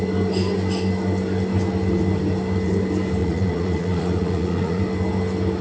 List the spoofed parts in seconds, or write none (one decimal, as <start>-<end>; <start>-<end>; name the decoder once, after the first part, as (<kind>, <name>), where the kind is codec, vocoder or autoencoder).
3.2-4.8 (vocoder, Vocos)